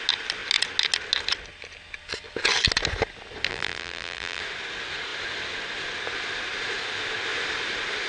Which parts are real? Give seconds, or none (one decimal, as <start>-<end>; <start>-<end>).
0.0-3.5; 4.4-8.1